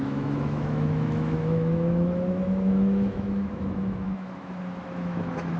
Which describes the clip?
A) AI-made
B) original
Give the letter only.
A